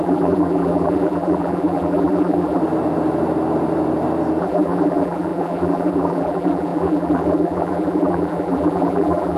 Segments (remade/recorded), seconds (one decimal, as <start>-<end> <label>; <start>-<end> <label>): 0.0-2.6 remade; 2.6-4.4 recorded; 4.4-9.4 remade